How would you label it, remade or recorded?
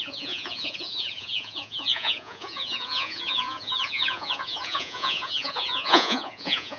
remade